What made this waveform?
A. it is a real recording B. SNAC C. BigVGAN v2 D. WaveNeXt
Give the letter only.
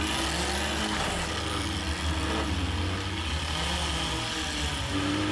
A